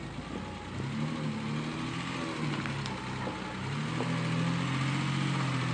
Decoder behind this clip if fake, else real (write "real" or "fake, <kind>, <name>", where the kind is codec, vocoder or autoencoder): real